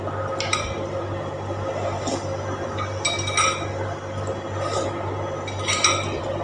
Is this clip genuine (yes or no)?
yes